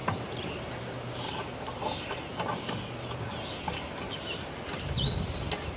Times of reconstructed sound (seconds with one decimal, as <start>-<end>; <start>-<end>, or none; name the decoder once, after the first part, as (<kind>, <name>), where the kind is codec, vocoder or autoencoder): 1.3-2.3 (vocoder, BigVGAN v2)